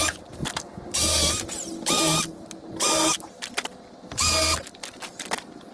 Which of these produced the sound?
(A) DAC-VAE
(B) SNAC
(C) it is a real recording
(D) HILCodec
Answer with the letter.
C